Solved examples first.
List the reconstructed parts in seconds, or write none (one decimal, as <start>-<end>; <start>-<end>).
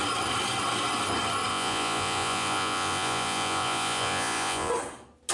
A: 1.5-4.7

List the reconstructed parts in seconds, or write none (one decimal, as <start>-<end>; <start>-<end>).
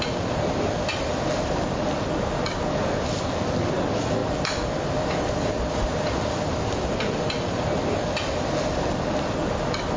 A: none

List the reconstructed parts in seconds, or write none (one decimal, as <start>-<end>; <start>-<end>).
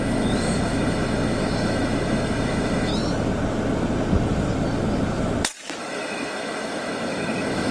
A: 0.0-2.9; 5.8-7.7